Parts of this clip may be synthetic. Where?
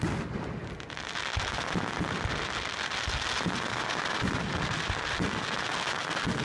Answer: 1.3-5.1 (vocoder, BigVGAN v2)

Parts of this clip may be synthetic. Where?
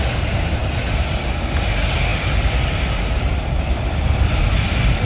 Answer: none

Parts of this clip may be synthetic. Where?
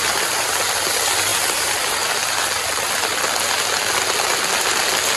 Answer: none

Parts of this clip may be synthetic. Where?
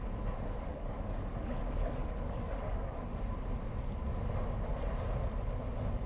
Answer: 0.7-3.0 (codec, DAC)